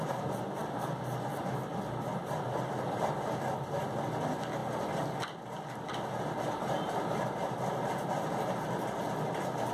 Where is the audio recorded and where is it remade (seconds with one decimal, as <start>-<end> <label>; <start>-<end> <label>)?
0.0-9.7 recorded